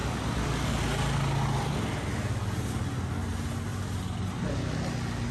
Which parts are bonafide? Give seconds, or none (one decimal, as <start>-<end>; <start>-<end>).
0.0-5.3